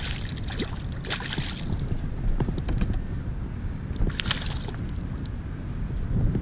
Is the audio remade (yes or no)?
no